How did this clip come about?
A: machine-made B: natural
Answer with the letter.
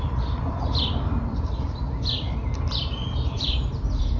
A